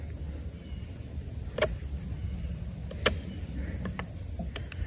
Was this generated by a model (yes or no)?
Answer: no